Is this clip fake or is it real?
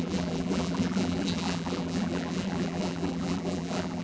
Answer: fake